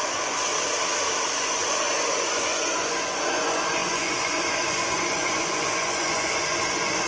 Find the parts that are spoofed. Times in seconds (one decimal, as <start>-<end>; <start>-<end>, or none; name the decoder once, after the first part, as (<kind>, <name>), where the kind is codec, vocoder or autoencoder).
0.0-0.5 (vocoder, Vocos); 1.3-7.1

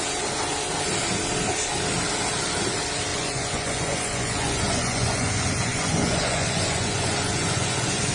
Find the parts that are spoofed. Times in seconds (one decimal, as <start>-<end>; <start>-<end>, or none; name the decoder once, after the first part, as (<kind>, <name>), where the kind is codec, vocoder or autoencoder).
3.1-8.1 (vocoder, Vocos)

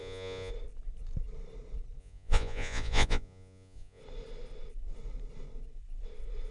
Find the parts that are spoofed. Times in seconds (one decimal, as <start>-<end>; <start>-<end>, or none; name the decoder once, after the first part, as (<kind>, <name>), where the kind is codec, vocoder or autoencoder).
0.0-0.5 (vocoder, Vocos); 2.0-4.0